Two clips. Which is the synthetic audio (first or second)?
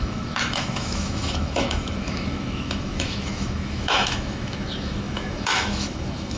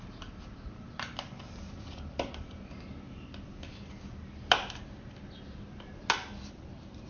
first